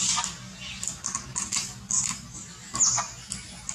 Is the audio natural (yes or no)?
yes